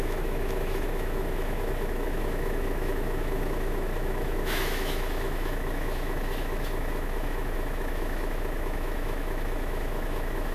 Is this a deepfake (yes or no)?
yes